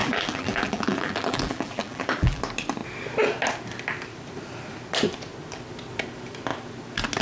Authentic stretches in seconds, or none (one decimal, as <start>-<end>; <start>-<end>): 2.4-7.2

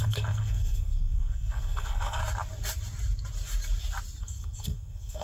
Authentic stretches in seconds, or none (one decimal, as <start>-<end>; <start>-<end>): 2.2-4.2

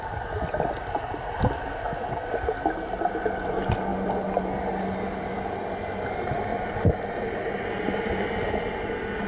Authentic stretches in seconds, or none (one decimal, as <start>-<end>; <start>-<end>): 0.0-9.3

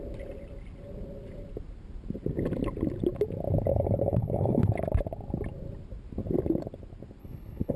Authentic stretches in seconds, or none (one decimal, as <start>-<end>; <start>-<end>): 0.0-3.7; 4.7-7.2